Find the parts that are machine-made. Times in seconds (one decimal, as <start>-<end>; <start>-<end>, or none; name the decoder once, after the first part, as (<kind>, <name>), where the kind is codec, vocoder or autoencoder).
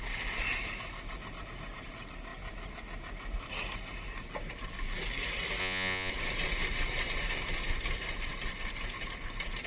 5.6-6.1 (vocoder, Vocos)